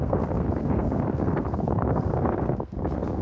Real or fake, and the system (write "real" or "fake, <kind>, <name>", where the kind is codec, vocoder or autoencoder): fake, codec, SNAC